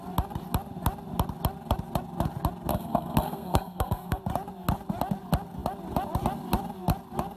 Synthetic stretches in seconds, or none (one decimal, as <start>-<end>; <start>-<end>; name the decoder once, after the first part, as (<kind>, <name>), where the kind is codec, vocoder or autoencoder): 2.7-4.2 (codec, SNAC)